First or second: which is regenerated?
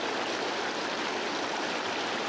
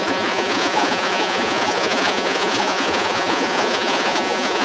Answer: second